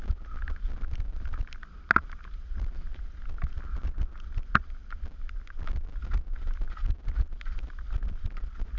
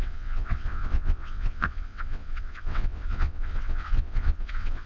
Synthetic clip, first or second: second